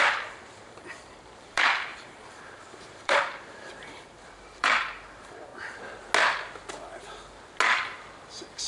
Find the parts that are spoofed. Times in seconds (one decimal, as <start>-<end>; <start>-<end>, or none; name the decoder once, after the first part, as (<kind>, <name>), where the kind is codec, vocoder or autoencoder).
0.0-5.5 (vocoder, BigVGAN v2)